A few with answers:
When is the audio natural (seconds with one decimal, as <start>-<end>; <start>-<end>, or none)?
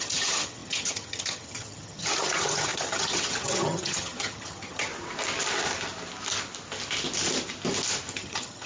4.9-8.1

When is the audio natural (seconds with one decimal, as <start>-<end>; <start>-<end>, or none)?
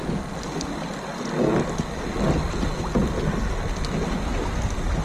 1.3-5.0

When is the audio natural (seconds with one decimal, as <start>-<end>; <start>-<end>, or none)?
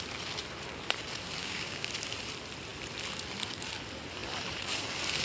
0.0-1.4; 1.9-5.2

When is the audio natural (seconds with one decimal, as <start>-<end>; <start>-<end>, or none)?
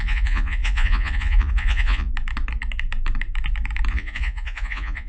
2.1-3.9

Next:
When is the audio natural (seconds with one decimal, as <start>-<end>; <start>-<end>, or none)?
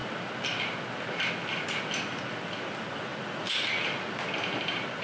0.0-5.0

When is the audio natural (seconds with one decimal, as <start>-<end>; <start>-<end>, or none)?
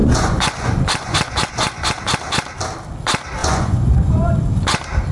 2.0-3.4; 4.3-5.1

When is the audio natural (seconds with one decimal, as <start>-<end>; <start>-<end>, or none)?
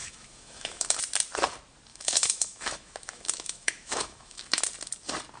1.0-1.9; 4.6-5.4